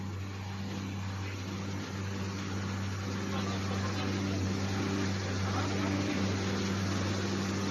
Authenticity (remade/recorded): recorded